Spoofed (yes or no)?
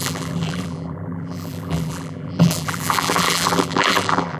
yes